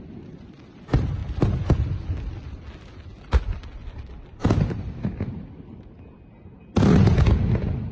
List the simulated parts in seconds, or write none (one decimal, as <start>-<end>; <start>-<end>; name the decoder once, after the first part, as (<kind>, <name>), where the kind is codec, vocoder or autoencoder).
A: none